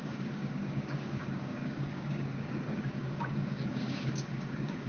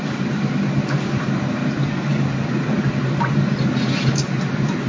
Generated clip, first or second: first